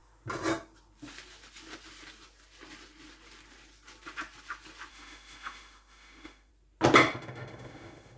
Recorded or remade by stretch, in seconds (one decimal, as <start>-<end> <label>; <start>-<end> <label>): 0.0-4.9 recorded; 4.9-6.5 remade; 6.5-7.1 recorded; 7.1-8.2 remade